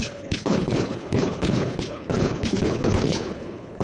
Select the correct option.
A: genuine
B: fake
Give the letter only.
B